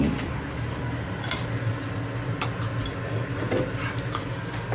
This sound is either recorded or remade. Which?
recorded